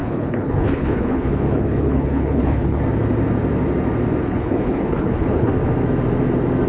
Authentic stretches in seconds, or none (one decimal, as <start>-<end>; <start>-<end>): 2.8-4.2; 5.5-6.7